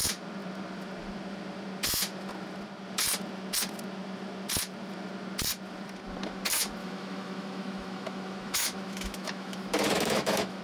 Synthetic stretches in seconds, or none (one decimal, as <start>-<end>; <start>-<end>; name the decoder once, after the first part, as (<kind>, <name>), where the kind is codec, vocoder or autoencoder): 6.8-10.6 (autoencoder, DAC-VAE)